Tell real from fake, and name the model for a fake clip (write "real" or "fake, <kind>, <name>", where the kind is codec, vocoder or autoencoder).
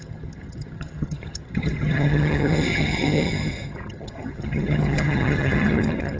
fake, vocoder, HiFi-GAN